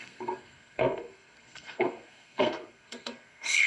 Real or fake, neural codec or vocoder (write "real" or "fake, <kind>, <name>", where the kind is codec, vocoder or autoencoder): fake, codec, SNAC